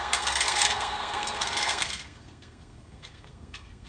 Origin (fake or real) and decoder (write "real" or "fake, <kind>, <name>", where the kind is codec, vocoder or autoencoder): fake, codec, SNAC